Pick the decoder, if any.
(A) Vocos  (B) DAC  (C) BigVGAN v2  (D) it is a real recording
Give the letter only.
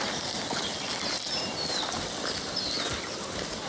D